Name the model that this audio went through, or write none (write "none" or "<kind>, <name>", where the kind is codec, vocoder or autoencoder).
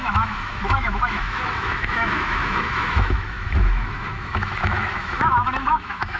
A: autoencoder, DAC-VAE